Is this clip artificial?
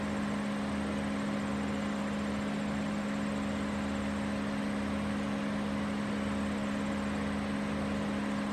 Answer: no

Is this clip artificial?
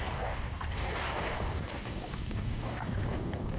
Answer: yes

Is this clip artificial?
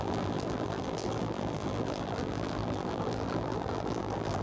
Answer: yes